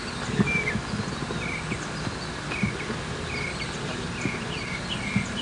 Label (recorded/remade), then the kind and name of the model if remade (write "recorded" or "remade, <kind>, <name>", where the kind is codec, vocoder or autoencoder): recorded